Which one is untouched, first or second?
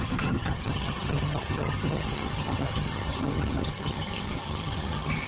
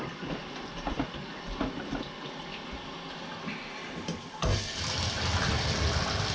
second